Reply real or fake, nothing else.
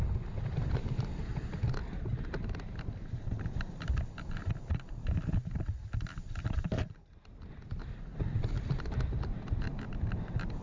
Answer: real